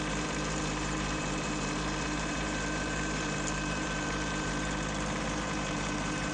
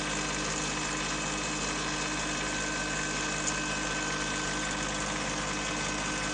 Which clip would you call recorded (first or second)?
second